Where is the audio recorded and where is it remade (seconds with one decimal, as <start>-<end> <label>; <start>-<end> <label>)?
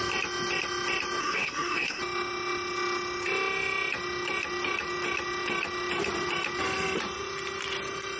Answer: 0.0-1.2 recorded; 1.2-2.0 remade; 2.0-8.2 recorded